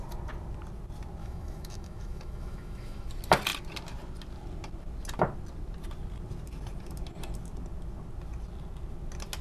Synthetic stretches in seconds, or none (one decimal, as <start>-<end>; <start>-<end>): 1.2-3.1